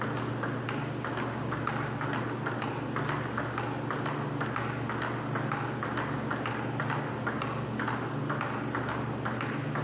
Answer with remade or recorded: recorded